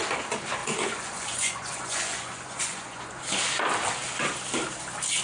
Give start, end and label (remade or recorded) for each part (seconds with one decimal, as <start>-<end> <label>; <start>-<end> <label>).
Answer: 0.0-0.6 recorded; 0.6-3.2 remade; 3.2-5.2 recorded